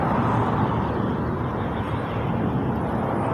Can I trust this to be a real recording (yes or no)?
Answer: yes